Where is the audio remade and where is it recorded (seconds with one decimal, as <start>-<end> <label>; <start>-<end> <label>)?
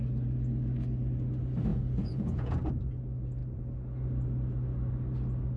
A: 0.0-1.7 recorded; 1.7-2.8 remade; 2.8-5.6 recorded